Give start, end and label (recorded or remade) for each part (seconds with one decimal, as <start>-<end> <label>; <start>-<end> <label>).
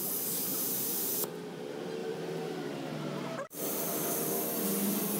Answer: 0.0-0.5 recorded; 0.5-1.2 remade; 1.2-2.0 recorded; 2.0-2.7 remade; 2.7-5.2 recorded